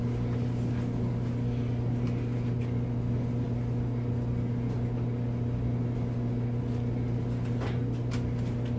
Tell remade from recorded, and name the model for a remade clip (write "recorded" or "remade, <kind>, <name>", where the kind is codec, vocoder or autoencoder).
recorded